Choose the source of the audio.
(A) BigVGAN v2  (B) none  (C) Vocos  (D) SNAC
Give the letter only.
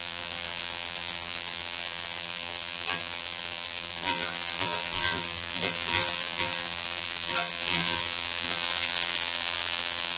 A